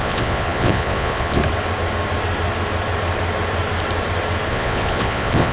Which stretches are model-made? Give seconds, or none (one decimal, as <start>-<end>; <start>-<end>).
0.0-1.4; 4.5-5.5